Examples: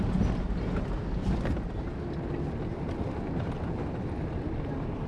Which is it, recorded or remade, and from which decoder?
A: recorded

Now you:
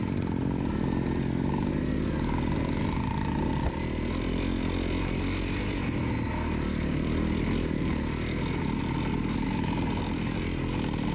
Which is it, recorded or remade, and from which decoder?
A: recorded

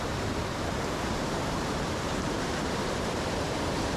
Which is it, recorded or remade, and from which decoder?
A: remade, vocoder, BigVGAN v2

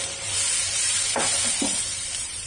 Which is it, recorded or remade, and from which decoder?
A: remade, vocoder, BigVGAN v2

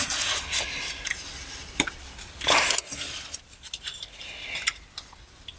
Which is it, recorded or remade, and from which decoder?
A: remade, vocoder, BigVGAN v2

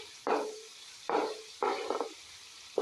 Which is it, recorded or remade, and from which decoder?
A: remade, vocoder, BigVGAN v2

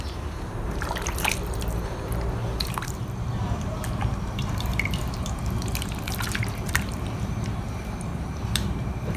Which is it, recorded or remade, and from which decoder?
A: remade, vocoder, BigVGAN v2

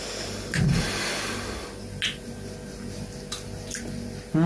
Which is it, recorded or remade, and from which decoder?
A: recorded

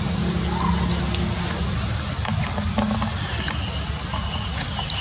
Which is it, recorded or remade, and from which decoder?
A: recorded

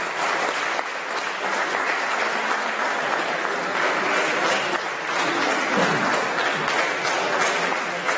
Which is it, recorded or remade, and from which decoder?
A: recorded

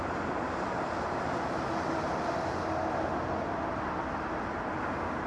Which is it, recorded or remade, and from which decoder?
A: recorded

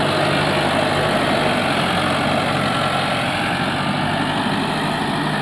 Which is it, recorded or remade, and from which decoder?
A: recorded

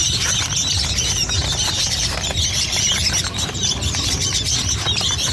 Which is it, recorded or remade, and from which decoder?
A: remade, vocoder, BigVGAN v2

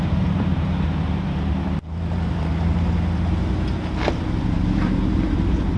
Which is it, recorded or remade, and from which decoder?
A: remade, vocoder, BigVGAN v2